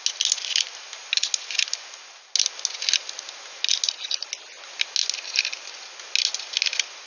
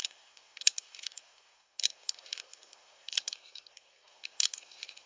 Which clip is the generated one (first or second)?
second